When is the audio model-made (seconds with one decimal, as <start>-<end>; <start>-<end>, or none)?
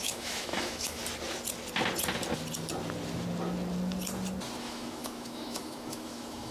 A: 0.0-1.0; 4.6-6.5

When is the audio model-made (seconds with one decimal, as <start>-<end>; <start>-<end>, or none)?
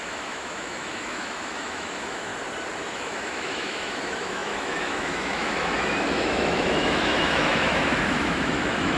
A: 0.0-2.3; 2.9-9.0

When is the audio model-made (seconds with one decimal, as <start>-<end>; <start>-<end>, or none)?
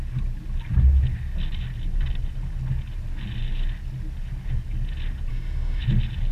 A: 5.3-5.8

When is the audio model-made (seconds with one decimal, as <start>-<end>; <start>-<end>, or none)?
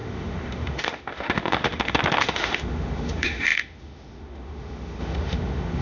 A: 0.0-5.8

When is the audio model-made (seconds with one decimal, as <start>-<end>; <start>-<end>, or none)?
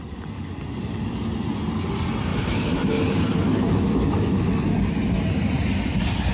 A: 2.3-4.6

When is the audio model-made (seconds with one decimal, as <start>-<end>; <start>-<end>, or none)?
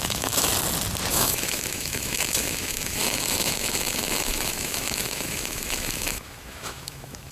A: 0.0-0.5; 1.1-7.3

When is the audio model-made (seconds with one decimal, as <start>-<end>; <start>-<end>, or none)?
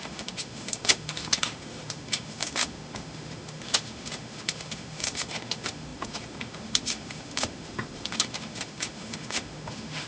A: 0.0-10.1